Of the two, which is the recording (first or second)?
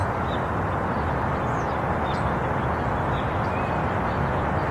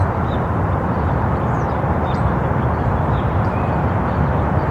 first